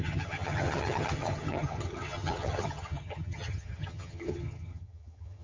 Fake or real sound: fake